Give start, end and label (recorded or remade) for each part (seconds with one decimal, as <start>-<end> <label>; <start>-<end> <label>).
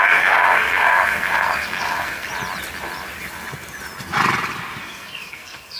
0.0-2.3 remade; 2.3-4.8 recorded; 4.8-5.8 remade